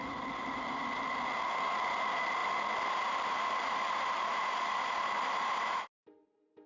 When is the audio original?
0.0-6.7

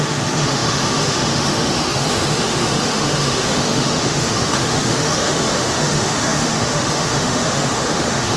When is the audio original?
none